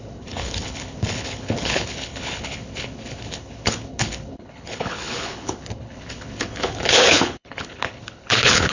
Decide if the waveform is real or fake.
fake